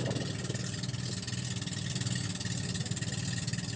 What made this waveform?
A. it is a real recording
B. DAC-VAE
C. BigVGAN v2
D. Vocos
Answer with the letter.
A